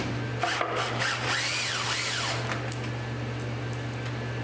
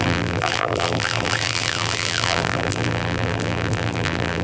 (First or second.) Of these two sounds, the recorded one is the first